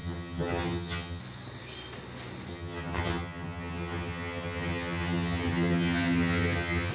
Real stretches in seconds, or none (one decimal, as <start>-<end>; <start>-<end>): 1.2-2.5